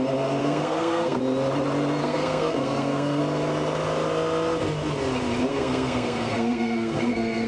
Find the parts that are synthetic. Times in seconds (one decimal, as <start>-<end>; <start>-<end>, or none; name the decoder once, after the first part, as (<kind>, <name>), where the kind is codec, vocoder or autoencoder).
0.4-1.2 (codec, SNAC); 2.0-3.2; 5.5-7.5